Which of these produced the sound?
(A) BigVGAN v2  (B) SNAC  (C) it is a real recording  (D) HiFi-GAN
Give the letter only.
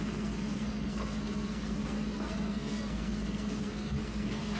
B